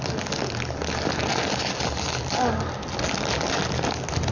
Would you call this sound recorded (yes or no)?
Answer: yes